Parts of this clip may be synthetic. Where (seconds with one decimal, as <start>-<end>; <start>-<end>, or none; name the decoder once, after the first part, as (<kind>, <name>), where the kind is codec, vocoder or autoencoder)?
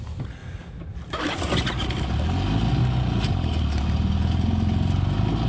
none